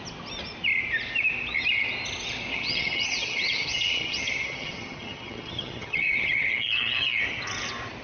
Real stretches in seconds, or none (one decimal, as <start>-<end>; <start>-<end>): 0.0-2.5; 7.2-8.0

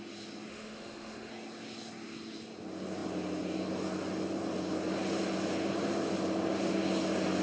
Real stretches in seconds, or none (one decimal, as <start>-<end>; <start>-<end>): 0.0-0.5; 1.3-7.4

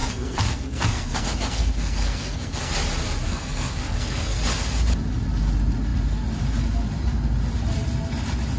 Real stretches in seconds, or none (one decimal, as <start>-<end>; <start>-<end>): 2.7-3.3; 4.4-8.6